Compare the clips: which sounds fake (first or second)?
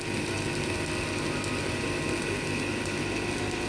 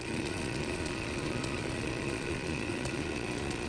second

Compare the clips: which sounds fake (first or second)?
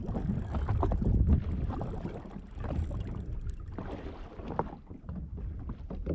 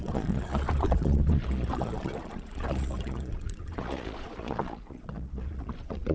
second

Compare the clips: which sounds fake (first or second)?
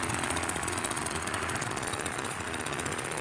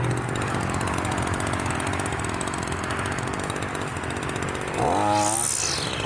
first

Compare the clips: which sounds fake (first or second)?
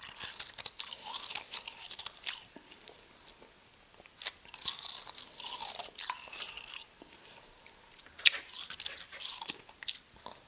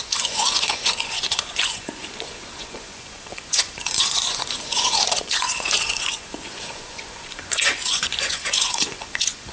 second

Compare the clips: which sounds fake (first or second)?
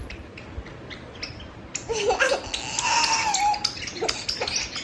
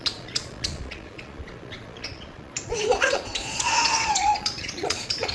second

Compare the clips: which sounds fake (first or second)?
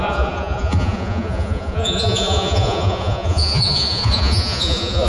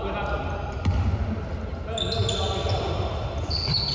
first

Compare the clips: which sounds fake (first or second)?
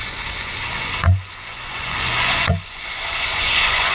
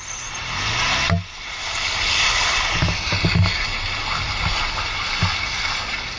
first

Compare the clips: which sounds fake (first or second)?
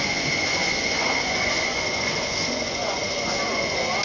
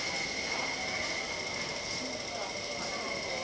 first